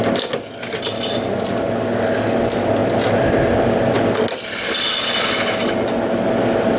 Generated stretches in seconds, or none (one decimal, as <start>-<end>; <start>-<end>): none